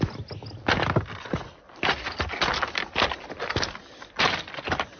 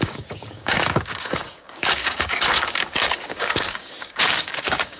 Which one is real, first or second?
first